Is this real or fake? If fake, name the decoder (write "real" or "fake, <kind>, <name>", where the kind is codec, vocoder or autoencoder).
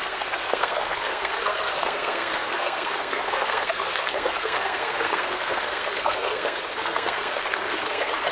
fake, codec, SNAC